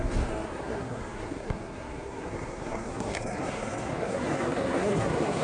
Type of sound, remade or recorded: remade